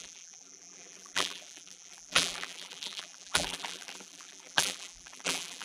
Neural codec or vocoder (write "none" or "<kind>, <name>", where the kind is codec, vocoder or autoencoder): vocoder, BigVGAN v2